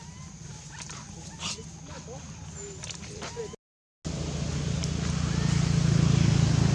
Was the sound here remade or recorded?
recorded